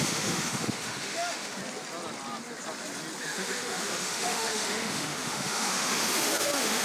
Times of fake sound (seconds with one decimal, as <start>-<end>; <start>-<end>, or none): 0.0-1.6; 3.2-6.8